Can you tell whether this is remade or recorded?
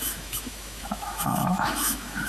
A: remade